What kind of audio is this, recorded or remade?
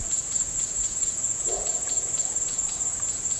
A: remade